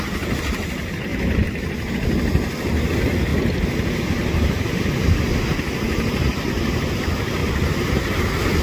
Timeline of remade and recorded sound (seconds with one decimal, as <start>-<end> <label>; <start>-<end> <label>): 0.0-1.1 recorded; 1.1-1.9 remade; 1.9-3.3 recorded; 3.3-6.9 remade; 6.9-7.4 recorded; 7.4-8.2 remade; 8.2-8.6 recorded